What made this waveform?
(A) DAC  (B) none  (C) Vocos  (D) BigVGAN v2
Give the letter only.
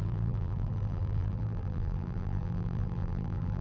D